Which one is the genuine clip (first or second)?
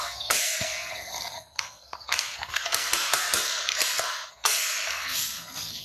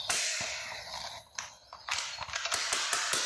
second